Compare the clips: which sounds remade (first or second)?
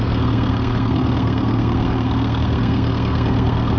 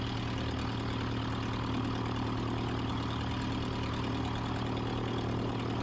first